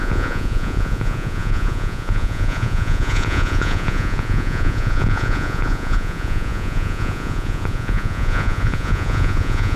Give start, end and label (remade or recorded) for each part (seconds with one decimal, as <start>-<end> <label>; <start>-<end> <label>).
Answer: 0.0-9.8 remade